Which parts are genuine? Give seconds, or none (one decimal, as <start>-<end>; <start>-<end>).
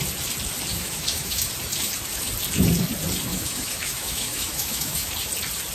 0.0-0.7; 1.5-3.3; 5.1-5.7